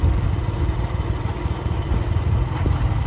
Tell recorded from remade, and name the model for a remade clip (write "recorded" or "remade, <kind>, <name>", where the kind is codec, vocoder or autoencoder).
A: recorded